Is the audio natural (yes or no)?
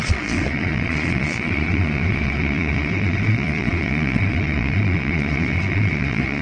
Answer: no